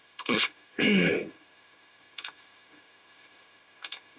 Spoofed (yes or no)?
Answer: yes